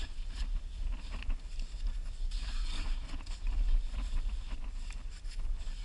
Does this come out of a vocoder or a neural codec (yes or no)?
no